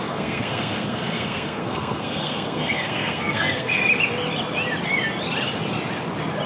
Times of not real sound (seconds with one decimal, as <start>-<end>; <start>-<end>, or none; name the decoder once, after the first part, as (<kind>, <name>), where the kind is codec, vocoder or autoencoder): 0.0-3.8 (codec, SNAC)